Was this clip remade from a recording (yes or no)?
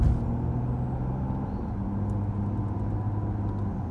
no